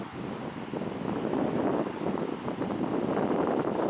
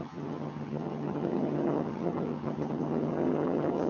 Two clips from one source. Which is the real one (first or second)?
first